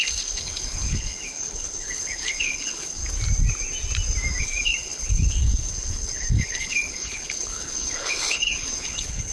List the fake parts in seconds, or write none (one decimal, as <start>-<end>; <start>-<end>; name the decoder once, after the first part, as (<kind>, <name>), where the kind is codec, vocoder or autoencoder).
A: 0.0-3.0 (codec, HILCodec); 4.4-9.3